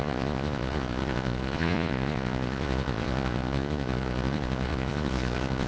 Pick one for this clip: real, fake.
fake